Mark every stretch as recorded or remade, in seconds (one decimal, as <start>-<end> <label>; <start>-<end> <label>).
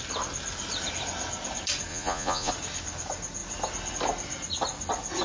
0.0-1.9 recorded; 1.9-2.5 remade; 2.5-5.2 recorded